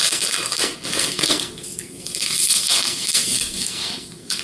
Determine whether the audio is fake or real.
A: fake